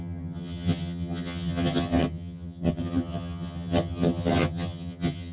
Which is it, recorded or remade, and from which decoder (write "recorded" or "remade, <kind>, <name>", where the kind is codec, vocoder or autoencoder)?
remade, vocoder, HiFi-GAN